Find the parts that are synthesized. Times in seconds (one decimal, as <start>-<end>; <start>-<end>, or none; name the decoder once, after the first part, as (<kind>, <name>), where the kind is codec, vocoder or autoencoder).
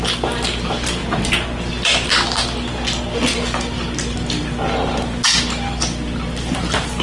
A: none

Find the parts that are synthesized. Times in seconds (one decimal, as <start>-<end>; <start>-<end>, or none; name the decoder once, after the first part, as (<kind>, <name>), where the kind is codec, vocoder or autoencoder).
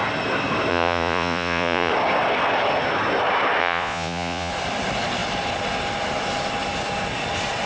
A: 0.7-1.9 (vocoder, Vocos); 3.6-4.5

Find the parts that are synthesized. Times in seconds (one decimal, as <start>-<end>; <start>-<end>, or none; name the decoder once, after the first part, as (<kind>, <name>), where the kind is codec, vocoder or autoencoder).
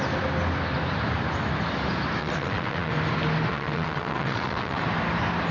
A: 2.2-2.9 (vocoder, WaveNeXt); 3.5-4.8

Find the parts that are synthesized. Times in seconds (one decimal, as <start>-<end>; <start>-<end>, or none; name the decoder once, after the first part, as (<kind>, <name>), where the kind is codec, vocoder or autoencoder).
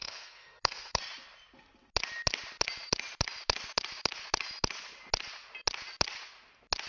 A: 0.0-1.0 (codec, SNAC)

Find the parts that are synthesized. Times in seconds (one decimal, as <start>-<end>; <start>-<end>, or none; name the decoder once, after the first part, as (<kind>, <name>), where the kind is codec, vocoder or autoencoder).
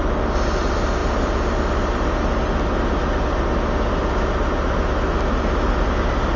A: none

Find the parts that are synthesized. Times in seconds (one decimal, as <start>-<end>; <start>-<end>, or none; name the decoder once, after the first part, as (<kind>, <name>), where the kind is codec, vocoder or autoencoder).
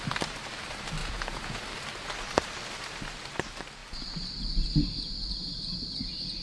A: 1.0-1.6 (vocoder, Vocos)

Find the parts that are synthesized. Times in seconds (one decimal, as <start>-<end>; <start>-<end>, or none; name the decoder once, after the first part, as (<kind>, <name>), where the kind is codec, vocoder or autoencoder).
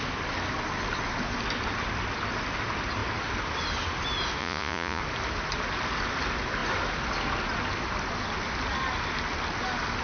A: 4.4-5.0 (vocoder, Vocos)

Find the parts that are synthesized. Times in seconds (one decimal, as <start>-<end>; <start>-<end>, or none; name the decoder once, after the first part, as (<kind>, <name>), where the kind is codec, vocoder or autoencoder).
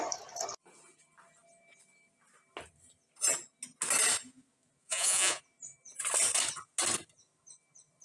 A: 4.8-5.4 (vocoder, Vocos)